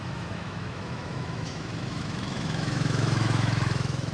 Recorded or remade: remade